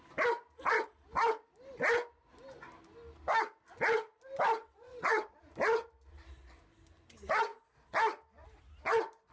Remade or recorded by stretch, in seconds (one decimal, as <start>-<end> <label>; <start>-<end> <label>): 0.0-4.6 recorded; 4.6-5.4 remade; 5.4-9.3 recorded